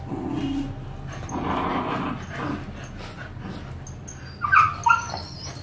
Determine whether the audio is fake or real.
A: real